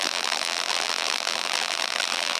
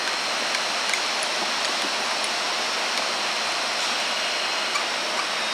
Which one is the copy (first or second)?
first